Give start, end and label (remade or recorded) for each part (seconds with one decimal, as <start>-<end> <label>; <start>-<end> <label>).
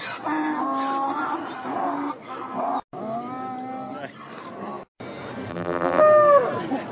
0.0-5.5 recorded; 5.5-6.0 remade; 6.0-6.9 recorded